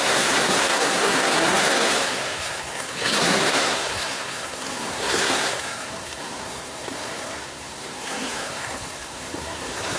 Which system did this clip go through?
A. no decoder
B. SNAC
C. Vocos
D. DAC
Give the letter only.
B